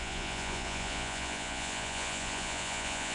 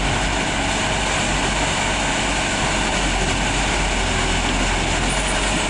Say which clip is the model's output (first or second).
first